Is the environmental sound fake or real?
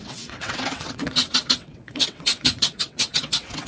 fake